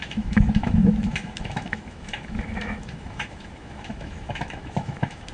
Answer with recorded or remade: remade